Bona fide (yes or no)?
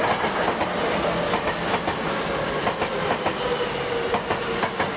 yes